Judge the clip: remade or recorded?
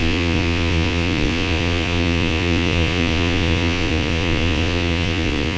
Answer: remade